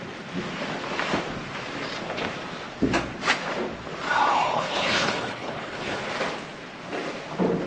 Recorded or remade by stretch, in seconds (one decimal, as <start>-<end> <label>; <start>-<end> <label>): 0.0-4.3 recorded; 4.3-6.0 remade; 6.0-7.7 recorded